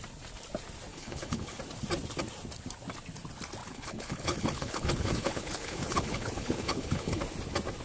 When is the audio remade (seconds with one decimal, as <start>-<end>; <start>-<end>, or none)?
0.9-1.6; 3.6-7.2